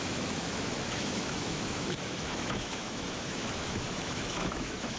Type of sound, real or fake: fake